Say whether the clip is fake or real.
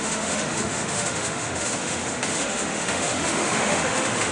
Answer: fake